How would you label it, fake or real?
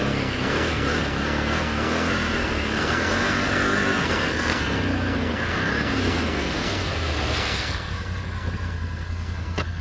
fake